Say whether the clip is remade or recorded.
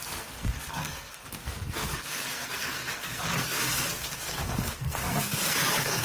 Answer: remade